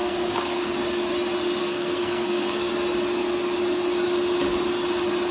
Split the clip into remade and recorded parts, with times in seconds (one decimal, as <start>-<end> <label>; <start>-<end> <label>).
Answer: 0.0-0.7 remade; 0.7-1.6 recorded; 1.6-2.7 remade; 2.7-5.3 recorded